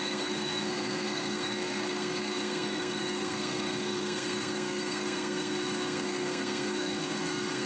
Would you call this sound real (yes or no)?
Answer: no